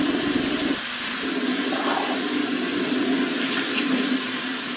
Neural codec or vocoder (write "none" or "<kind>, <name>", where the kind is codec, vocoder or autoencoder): none